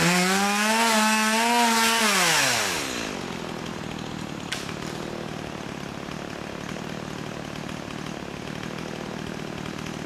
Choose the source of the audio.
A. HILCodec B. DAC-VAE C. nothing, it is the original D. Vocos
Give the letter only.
C